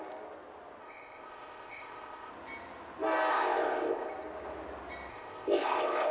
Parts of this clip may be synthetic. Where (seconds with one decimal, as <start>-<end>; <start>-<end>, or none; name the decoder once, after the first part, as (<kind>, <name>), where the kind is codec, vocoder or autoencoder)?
0.8-2.3 (codec, ZipCodec); 3.3-4.1; 5.1-6.1